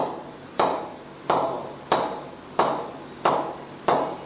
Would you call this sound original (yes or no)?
yes